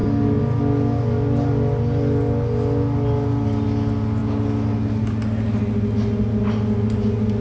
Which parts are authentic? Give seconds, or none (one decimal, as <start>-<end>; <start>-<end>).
0.0-7.4